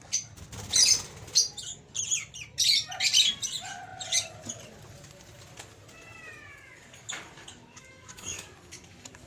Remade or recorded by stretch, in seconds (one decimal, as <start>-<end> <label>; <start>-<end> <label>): 0.0-6.5 recorded; 6.5-9.3 remade